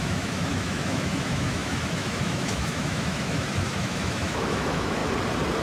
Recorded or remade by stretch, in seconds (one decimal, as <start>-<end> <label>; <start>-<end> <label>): 0.0-5.0 remade; 5.0-5.6 recorded